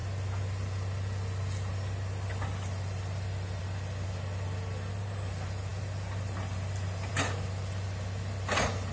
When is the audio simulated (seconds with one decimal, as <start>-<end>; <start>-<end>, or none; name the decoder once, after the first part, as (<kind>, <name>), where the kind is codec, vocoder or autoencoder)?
none